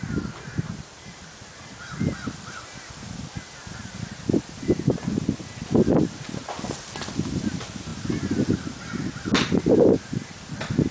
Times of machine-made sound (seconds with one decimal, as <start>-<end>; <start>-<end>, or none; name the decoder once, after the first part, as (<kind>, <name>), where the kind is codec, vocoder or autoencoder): none